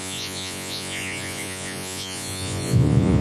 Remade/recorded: remade